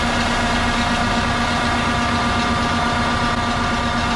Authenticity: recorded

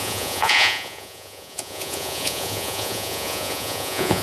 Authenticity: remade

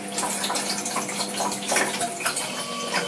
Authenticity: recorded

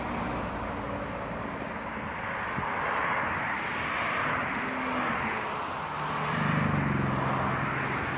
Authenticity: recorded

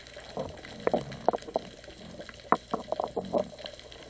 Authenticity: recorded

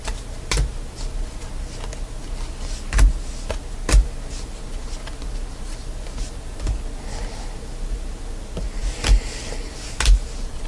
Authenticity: recorded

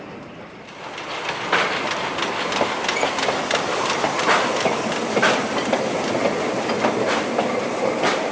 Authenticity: recorded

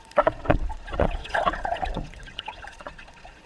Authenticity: remade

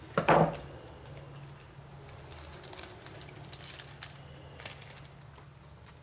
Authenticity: recorded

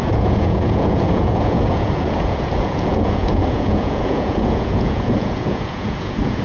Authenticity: remade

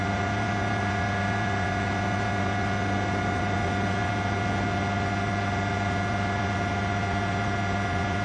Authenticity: recorded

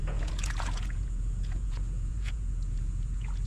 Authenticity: remade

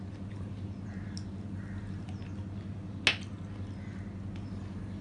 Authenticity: recorded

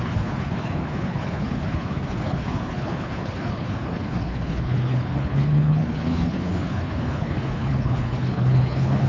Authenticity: remade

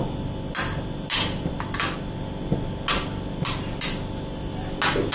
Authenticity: recorded